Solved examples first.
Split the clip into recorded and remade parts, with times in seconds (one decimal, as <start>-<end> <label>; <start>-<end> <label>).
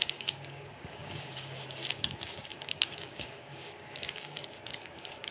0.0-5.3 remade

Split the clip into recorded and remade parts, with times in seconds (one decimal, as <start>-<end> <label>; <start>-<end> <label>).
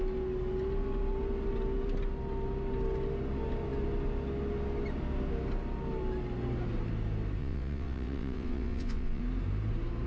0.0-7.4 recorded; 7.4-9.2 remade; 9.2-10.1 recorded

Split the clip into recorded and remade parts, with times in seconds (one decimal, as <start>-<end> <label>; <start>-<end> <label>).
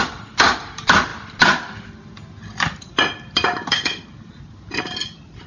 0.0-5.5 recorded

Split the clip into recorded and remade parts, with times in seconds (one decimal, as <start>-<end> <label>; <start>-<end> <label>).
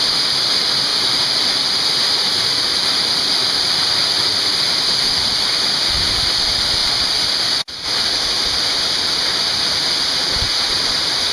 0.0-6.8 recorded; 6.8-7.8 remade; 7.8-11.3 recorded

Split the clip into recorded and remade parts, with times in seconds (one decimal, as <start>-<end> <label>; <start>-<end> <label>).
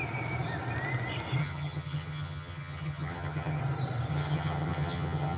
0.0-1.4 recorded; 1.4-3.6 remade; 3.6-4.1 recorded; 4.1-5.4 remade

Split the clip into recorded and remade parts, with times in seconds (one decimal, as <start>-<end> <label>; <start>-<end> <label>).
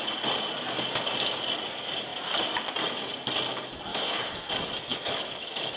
0.0-3.9 recorded; 3.9-4.5 remade; 4.5-4.9 recorded; 4.9-5.8 remade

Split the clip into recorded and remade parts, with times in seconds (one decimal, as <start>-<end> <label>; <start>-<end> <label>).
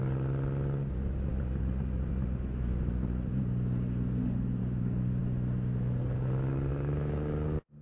0.0-4.6 recorded; 4.6-5.2 remade; 5.2-6.7 recorded; 6.7-7.8 remade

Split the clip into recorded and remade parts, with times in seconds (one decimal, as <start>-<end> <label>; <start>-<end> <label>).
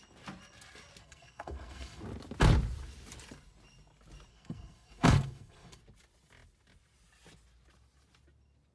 0.0-1.0 recorded; 1.0-2.0 remade; 2.0-4.3 recorded; 4.3-5.8 remade; 5.8-8.7 recorded